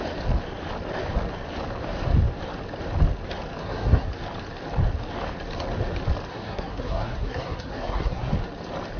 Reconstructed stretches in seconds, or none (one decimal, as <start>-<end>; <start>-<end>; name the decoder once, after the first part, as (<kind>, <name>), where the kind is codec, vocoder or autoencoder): 3.6-4.1 (codec, SNAC); 6.3-8.3